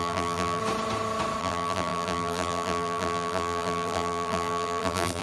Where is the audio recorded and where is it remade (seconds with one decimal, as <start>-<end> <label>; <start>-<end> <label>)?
0.0-0.6 remade; 0.6-1.4 recorded; 1.4-5.2 remade